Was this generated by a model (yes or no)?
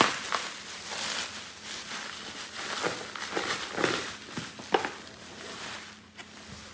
no